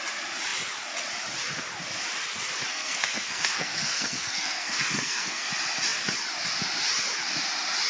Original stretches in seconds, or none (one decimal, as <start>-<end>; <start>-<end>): 0.0-2.7; 5.5-7.9